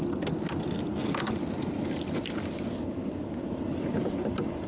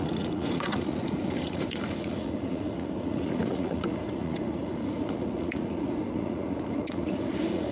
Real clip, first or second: first